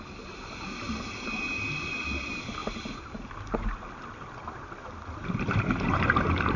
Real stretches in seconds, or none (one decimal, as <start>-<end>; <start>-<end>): 0.0-6.6

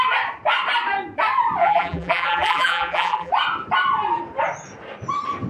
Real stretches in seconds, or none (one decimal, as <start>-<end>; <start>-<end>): 0.0-1.6; 3.3-5.5

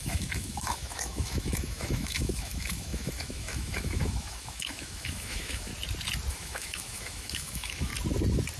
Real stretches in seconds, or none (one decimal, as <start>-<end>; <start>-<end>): 5.7-6.3; 7.9-8.6

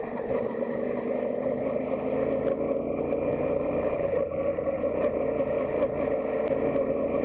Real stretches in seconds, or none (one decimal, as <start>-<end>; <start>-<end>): 0.0-3.3; 5.1-7.2

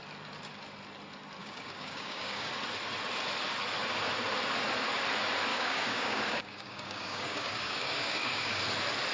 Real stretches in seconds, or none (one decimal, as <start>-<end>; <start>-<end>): 0.0-1.4; 2.5-5.5; 8.6-9.1

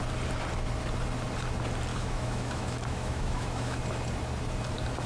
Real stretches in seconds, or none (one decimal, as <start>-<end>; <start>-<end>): 0.0-1.9; 3.8-5.1